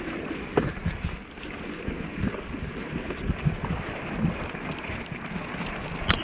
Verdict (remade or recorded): recorded